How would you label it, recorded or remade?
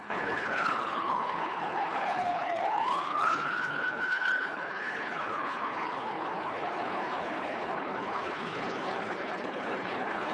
remade